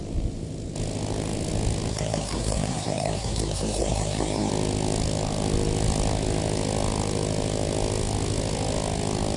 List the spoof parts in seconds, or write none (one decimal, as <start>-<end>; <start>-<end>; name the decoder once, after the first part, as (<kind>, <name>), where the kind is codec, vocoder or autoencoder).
1.9-4.5 (codec, SNAC)